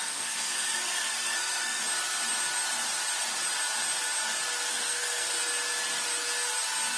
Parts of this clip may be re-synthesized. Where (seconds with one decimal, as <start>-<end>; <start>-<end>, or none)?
0.0-1.8; 4.7-5.4